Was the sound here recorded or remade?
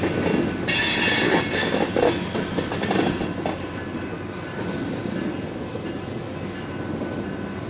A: recorded